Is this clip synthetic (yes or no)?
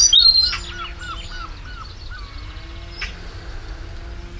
no